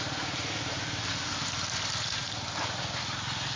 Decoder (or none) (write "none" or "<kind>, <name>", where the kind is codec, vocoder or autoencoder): none